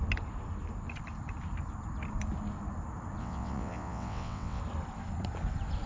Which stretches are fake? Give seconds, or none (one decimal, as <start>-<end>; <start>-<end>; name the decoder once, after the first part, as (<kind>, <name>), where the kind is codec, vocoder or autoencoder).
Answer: 3.2-4.6 (vocoder, WaveNeXt)